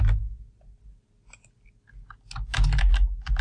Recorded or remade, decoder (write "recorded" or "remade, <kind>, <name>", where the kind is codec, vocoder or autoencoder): recorded